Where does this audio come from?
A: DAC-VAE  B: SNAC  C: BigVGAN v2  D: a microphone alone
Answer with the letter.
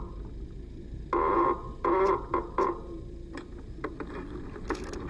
D